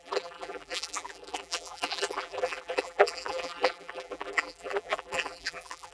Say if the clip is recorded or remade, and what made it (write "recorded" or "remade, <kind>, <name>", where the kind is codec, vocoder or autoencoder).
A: remade, vocoder, BigVGAN v2